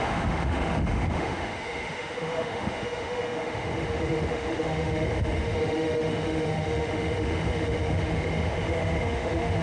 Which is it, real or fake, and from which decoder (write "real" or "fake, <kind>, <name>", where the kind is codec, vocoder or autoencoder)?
fake, autoencoder, DAC-VAE